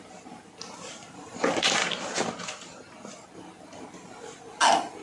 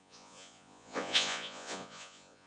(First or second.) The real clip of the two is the first